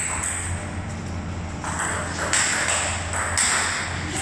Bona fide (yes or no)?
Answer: yes